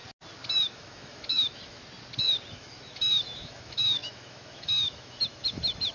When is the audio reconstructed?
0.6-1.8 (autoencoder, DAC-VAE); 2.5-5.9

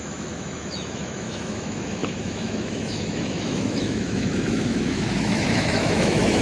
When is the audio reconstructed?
0.0-6.4 (autoencoder, DAC-VAE)

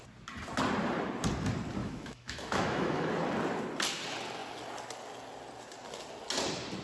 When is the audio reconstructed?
1.8-3.1 (autoencoder, DAC-VAE)

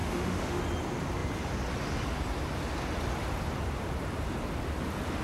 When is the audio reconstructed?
0.0-0.6 (autoencoder, DAC-VAE)

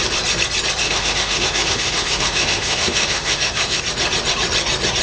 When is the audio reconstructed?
0.8-3.8 (autoencoder, DAC-VAE)

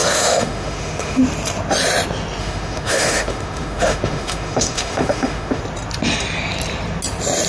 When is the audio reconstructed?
0.0-1.2 (autoencoder, DAC-VAE); 2.4-5.6

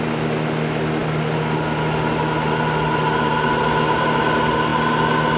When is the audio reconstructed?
none

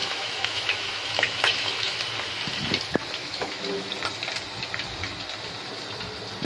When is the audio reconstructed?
0.0-2.0 (autoencoder, DAC-VAE); 3.2-3.9